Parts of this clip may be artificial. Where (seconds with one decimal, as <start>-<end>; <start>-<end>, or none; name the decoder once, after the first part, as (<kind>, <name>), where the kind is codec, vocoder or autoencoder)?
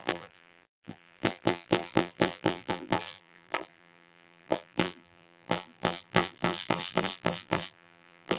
0.0-8.4 (vocoder, BigVGAN v2)